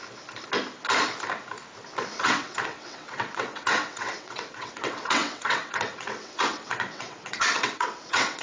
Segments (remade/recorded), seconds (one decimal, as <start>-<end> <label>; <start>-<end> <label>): 0.0-2.2 recorded; 2.2-8.4 remade